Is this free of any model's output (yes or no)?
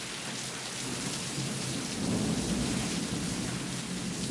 yes